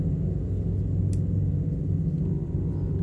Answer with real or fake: real